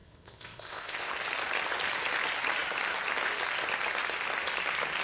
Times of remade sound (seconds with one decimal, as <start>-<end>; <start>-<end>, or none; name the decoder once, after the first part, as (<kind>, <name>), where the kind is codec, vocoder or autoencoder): 0.0-1.1 (codec, ZipCodec)